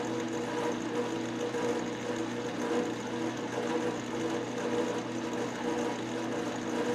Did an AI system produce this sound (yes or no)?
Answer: no